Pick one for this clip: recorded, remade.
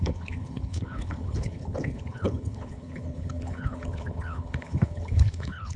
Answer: remade